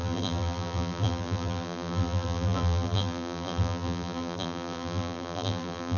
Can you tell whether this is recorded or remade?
remade